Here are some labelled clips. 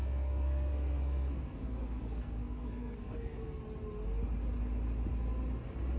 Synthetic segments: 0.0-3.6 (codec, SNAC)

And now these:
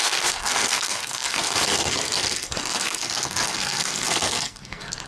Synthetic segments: 0.0-5.1 (codec, SNAC)

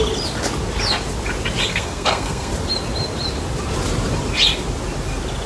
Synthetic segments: 1.7-2.5 (codec, SNAC)